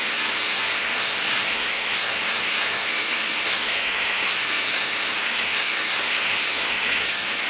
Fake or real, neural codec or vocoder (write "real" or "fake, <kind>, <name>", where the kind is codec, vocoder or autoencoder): fake, codec, SNAC